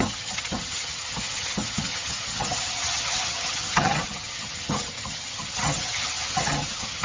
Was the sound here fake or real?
fake